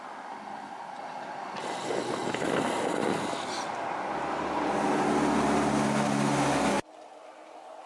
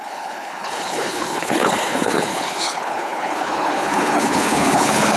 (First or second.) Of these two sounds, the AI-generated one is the second